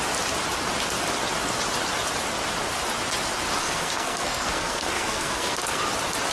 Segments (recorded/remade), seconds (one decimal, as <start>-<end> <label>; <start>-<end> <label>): 0.0-3.6 recorded; 3.6-5.8 remade; 5.8-6.3 recorded